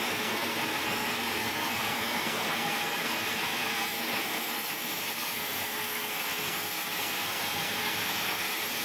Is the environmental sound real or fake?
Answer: fake